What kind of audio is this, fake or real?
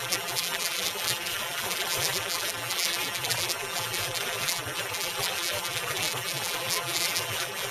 fake